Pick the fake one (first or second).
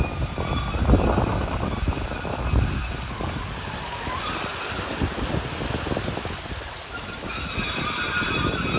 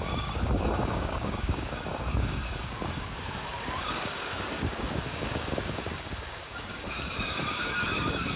second